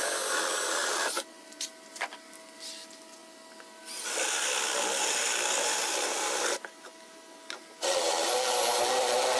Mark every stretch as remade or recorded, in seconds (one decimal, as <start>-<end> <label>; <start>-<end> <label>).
0.0-9.4 recorded

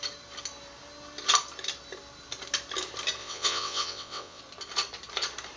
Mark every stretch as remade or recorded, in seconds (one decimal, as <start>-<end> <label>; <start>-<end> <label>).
0.0-3.2 recorded; 3.2-4.4 remade; 4.4-5.6 recorded

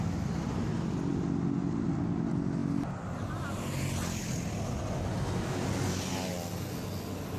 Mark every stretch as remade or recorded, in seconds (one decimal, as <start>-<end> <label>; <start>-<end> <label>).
0.0-7.4 recorded

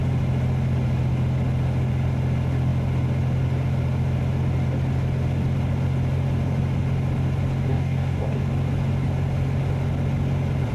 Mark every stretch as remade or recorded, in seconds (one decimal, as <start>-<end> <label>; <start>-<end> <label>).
0.0-7.7 recorded; 7.7-8.4 remade; 8.4-10.7 recorded

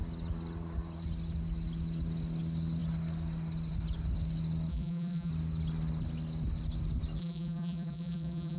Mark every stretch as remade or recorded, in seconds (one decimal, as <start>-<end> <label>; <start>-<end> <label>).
0.0-4.7 recorded; 4.7-5.3 remade; 5.3-7.2 recorded; 7.2-8.6 remade

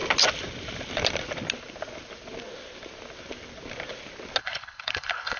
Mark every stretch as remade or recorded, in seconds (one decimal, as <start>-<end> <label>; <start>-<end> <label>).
0.0-4.4 recorded; 4.4-5.4 remade

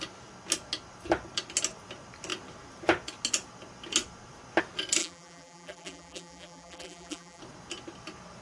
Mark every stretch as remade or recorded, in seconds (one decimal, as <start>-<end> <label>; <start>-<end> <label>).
0.0-5.0 recorded; 5.0-7.4 remade; 7.4-8.4 recorded

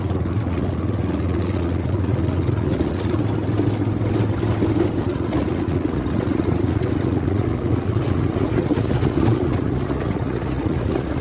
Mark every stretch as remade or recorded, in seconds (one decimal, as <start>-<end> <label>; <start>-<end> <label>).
0.0-3.2 remade; 3.2-5.0 recorded; 5.0-11.2 remade